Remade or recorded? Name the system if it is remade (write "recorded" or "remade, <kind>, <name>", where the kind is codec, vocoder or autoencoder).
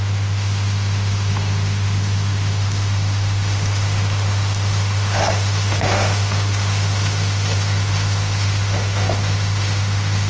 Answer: remade, autoencoder, DAC-VAE